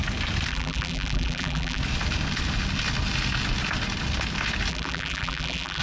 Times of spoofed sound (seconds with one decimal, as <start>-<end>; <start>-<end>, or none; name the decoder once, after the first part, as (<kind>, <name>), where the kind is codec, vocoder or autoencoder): 0.5-1.8 (vocoder, BigVGAN v2); 4.7-5.8